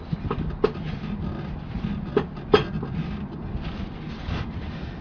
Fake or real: real